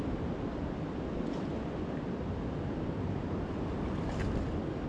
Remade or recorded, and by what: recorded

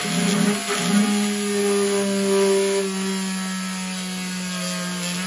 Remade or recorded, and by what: recorded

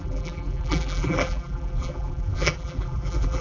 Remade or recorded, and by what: remade, vocoder, BigVGAN v2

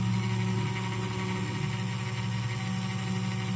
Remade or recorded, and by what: recorded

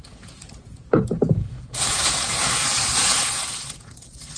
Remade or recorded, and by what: remade, vocoder, Vocos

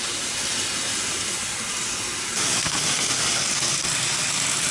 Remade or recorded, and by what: recorded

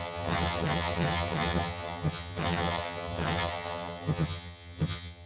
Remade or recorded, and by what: remade, vocoder, HiFi-GAN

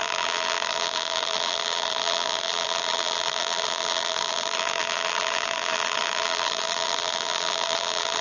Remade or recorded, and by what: remade, vocoder, BigVGAN v2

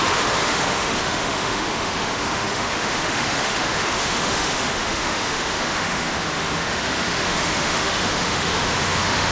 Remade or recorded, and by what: remade, autoencoder, DAC-VAE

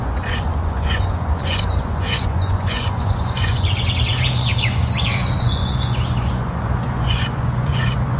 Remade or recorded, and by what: remade, vocoder, Vocos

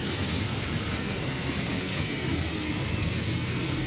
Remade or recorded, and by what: remade, codec, SNAC